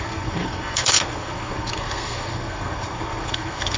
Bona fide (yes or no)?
no